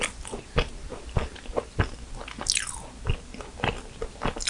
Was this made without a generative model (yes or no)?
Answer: yes